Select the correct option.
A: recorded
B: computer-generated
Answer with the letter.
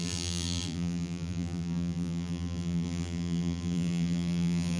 B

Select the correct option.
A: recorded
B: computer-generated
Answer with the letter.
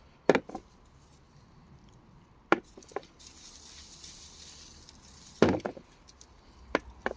A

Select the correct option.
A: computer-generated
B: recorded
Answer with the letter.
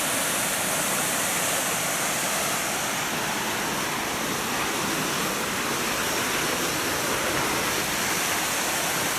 B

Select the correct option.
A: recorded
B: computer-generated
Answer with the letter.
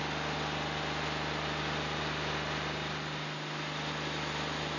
A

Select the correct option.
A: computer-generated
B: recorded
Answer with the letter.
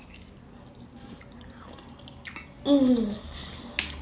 B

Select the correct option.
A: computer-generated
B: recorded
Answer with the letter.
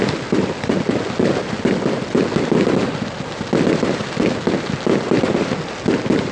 B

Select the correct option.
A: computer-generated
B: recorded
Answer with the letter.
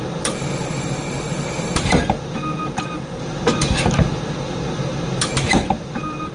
A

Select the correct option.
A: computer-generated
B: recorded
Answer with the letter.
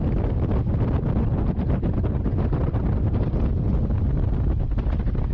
B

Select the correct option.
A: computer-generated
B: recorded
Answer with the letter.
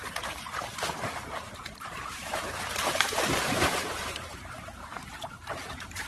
A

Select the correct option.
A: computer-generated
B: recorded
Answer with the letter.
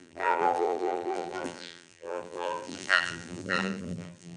A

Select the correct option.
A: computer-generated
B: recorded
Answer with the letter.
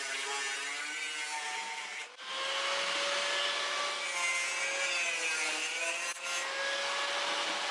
B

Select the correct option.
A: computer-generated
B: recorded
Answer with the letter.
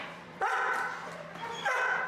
A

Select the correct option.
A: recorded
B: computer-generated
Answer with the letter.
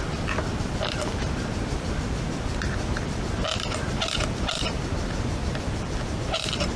B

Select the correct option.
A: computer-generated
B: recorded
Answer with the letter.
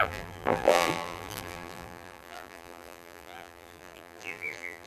A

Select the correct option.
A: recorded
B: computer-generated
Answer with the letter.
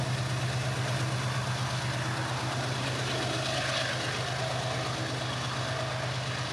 A